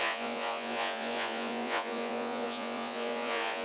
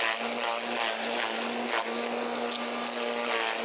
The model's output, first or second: first